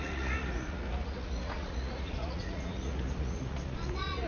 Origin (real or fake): fake